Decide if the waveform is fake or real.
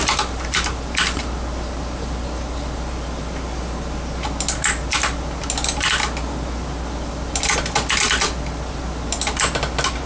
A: real